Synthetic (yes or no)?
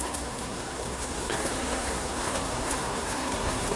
yes